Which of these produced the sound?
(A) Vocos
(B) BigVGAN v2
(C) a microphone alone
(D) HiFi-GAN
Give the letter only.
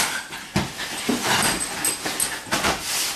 C